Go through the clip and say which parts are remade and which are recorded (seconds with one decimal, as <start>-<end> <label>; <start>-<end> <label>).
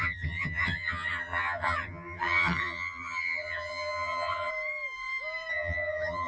0.0-4.5 remade; 4.5-5.5 recorded; 5.5-6.3 remade